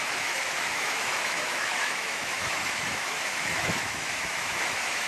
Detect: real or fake fake